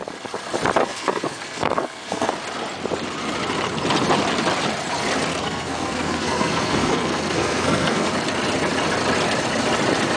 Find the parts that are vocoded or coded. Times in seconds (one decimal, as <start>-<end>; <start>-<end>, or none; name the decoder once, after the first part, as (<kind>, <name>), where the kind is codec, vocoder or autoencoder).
0.8-2.3 (codec, SNAC); 5.3-8.1